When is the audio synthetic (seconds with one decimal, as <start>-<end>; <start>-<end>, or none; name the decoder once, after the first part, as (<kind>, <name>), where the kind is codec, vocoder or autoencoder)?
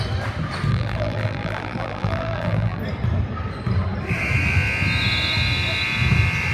0.7-2.8 (vocoder, BigVGAN v2)